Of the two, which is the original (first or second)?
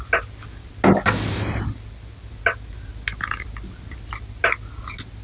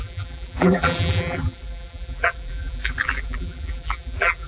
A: first